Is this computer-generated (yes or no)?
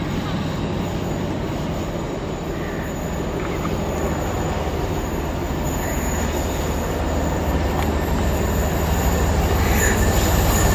no